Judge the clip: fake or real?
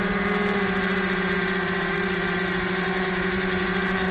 fake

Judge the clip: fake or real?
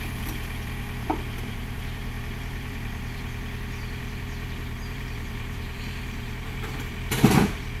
fake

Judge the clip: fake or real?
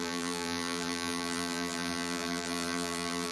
fake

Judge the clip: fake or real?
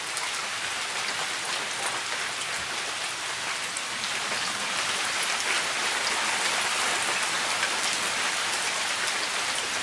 real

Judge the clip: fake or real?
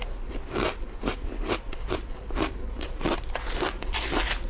real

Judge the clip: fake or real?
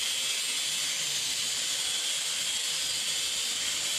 real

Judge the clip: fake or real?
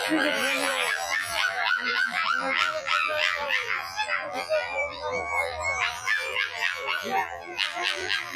fake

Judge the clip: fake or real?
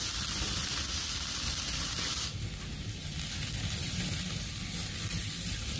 real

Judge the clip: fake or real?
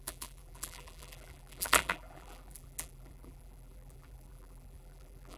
fake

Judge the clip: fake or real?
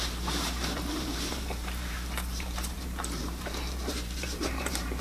fake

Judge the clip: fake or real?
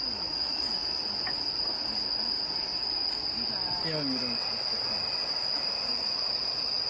real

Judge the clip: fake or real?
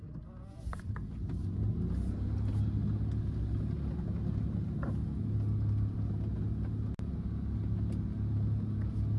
real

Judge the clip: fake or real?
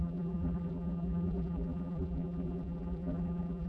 fake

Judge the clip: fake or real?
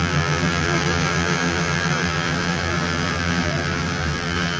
fake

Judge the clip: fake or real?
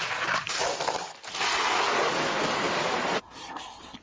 fake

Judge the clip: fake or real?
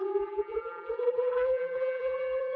fake